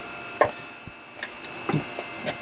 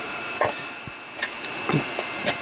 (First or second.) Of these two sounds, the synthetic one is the second